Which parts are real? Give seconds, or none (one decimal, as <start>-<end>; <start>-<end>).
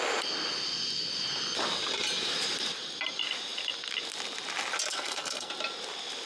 0.0-4.9; 5.5-6.3